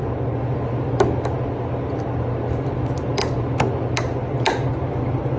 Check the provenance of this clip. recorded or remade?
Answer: recorded